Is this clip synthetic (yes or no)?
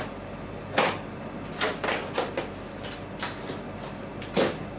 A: no